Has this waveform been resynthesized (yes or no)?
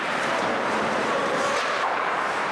yes